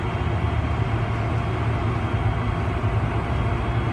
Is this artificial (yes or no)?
no